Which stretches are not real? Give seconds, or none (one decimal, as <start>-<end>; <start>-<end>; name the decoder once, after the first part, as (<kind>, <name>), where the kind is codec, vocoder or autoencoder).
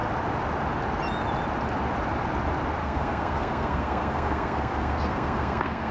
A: 2.8-5.9 (codec, SNAC)